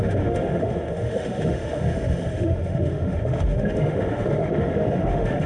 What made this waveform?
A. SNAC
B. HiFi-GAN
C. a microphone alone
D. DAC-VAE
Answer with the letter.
D